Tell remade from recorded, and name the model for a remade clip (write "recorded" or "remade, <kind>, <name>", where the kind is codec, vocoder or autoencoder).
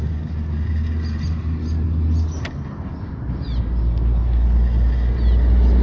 recorded